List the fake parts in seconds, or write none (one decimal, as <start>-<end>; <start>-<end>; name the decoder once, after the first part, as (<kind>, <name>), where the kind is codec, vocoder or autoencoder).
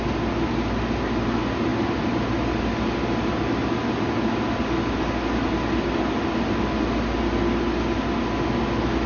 none